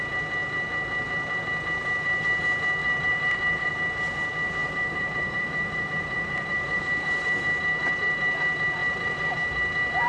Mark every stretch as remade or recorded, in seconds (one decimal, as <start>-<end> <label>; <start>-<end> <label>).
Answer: 0.0-2.8 recorded; 2.8-3.7 remade; 3.7-4.6 recorded; 4.6-6.8 remade; 6.8-8.8 recorded; 8.8-9.3 remade; 9.3-10.1 recorded